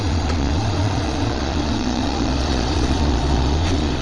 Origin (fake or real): fake